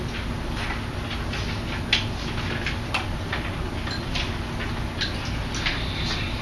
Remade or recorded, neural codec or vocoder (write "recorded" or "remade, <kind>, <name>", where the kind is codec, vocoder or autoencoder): recorded